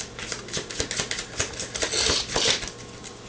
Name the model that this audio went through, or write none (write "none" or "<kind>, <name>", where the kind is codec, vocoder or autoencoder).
none